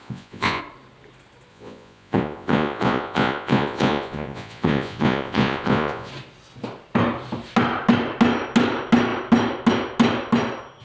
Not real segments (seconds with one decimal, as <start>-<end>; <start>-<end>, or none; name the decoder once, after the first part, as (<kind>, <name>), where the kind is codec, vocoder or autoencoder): 0.0-0.6 (vocoder, Vocos); 1.5-6.1